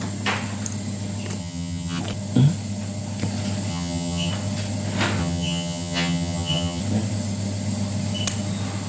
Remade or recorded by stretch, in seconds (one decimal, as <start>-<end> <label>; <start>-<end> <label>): 0.0-1.4 recorded; 1.4-2.0 remade; 2.0-3.7 recorded; 3.7-4.3 remade; 4.3-5.2 recorded; 5.2-6.8 remade; 6.8-8.9 recorded